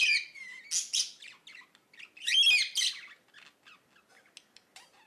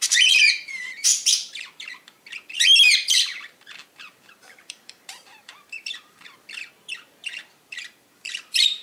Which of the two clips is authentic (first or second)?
first